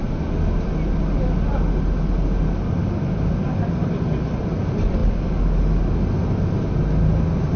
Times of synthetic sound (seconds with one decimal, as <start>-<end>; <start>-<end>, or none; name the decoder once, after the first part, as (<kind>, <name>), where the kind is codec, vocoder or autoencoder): none